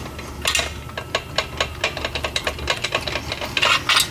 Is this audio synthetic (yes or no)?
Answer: no